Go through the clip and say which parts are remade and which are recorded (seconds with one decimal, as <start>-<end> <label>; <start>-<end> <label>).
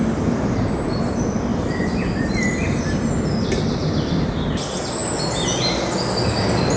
0.0-1.5 recorded; 1.5-2.4 remade; 2.4-3.8 recorded; 3.8-4.5 remade; 4.5-5.0 recorded; 5.0-6.8 remade